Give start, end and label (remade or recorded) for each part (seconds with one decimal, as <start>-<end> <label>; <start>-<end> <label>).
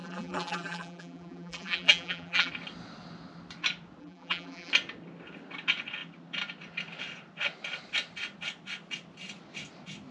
0.0-2.5 remade; 2.5-4.0 recorded; 4.0-4.7 remade; 4.7-10.1 recorded